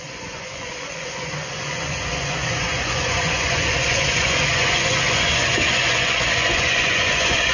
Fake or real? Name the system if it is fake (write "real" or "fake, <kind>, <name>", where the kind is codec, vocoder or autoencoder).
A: fake, vocoder, Vocos